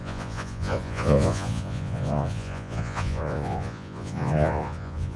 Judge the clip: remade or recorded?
remade